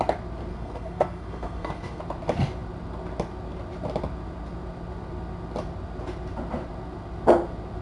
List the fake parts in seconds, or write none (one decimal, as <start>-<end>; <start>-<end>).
0.5-2.0